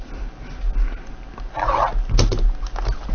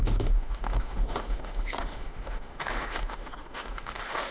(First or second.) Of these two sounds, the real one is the first